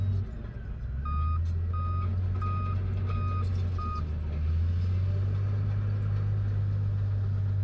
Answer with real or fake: real